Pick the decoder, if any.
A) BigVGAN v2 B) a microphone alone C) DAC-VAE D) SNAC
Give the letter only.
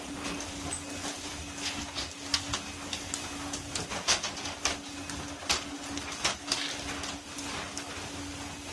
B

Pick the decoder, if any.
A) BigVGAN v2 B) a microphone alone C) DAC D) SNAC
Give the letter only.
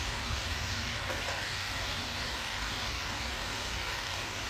C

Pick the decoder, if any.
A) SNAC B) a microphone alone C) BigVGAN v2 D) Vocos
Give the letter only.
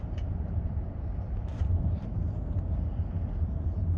C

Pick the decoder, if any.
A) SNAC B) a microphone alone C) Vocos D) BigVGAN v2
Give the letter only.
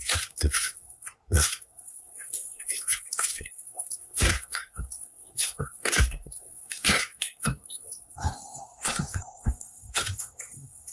A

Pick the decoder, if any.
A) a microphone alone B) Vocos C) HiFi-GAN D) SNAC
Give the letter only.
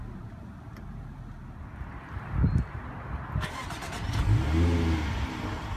A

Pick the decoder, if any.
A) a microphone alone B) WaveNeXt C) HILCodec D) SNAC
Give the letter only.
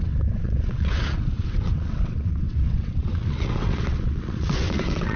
B